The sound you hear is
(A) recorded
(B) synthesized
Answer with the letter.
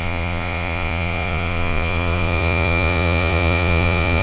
B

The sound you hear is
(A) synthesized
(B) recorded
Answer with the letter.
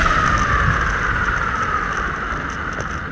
B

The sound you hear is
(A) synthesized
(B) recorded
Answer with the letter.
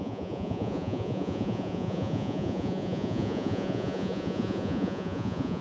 A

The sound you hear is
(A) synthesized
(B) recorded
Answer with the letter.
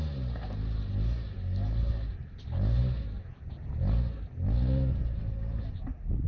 B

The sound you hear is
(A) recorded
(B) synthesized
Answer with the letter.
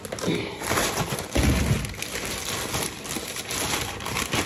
A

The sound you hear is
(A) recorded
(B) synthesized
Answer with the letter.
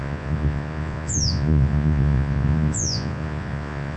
B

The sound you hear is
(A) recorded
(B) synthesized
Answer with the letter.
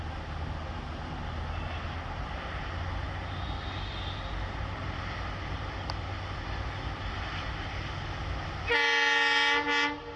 A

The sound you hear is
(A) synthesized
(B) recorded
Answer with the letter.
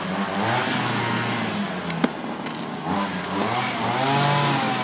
B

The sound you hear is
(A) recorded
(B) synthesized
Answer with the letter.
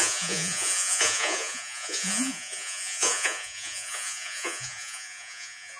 B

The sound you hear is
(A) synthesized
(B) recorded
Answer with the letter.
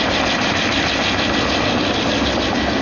B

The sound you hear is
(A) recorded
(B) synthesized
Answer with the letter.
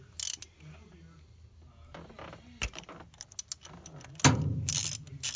A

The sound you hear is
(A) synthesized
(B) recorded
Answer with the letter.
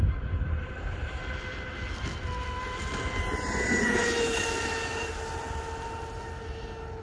B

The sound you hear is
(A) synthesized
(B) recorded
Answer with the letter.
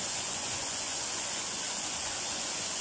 A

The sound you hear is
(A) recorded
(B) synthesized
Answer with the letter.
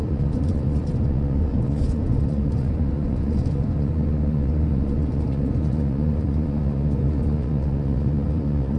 B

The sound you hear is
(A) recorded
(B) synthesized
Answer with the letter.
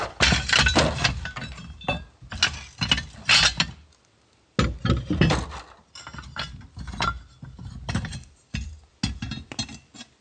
A